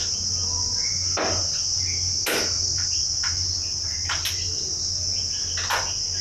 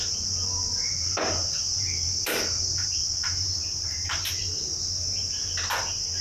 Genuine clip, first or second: first